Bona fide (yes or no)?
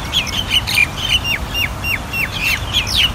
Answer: yes